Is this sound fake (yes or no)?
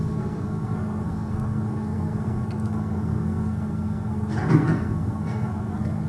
yes